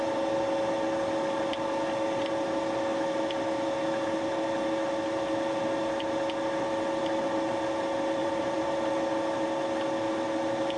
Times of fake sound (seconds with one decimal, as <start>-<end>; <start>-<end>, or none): 8.2-8.8